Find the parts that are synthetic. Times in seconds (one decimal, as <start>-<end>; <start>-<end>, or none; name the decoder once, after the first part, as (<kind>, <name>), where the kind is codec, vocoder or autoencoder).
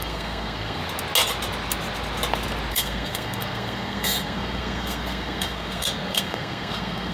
0.0-0.8 (codec, SNAC); 2.7-7.1